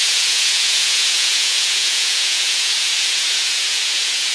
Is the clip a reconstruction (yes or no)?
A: yes